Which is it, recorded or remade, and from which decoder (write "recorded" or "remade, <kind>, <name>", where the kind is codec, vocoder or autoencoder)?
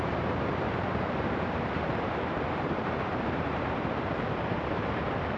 remade, vocoder, BigVGAN v2